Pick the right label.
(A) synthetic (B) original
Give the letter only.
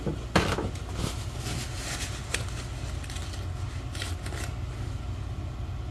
B